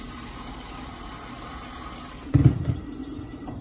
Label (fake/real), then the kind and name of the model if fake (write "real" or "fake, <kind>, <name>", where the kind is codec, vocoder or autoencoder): fake, vocoder, BigVGAN v2